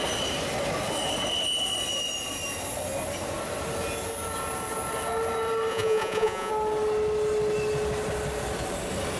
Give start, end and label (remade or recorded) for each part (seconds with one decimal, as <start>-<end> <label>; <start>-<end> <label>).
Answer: 0.0-5.7 recorded; 5.7-6.5 remade; 6.5-9.2 recorded